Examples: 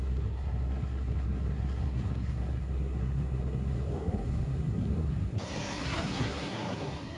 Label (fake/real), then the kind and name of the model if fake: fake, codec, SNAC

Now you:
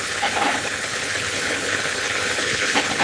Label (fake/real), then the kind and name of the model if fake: fake, codec, HILCodec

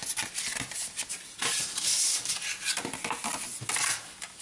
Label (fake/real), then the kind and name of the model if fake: real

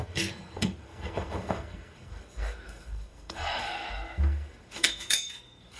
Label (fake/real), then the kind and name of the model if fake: fake, codec, SNAC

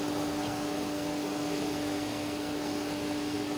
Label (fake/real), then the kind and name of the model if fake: fake, codec, SNAC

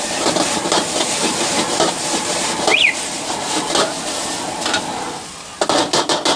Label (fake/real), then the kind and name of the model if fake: real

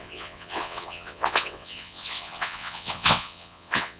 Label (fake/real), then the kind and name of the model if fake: fake, vocoder, WaveNeXt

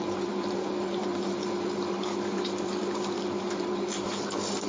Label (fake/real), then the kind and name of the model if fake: fake, vocoder, BigVGAN v2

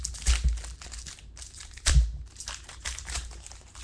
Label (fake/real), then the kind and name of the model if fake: real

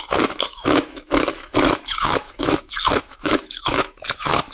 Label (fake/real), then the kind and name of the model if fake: fake, autoencoder, DAC-VAE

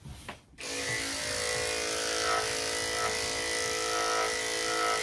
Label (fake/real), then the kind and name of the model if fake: real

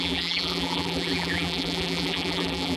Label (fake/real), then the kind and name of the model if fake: fake, vocoder, BigVGAN v2